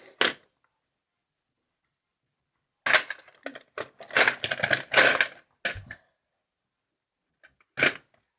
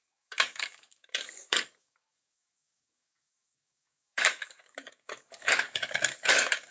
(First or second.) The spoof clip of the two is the second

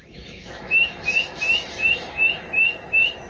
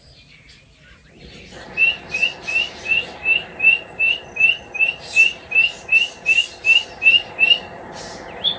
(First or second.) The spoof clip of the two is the first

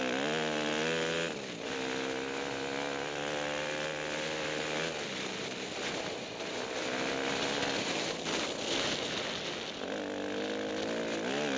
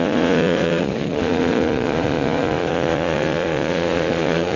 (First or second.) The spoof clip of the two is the second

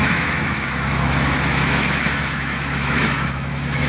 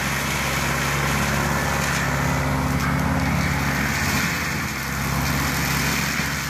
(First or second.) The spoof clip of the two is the first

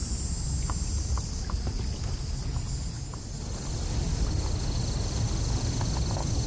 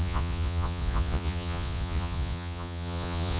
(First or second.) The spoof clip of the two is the second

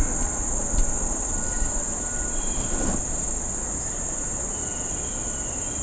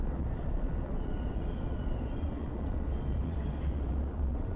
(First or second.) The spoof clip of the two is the second